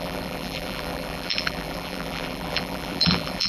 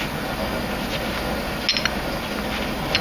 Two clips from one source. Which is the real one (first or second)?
second